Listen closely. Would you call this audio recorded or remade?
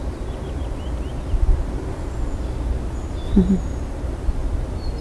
recorded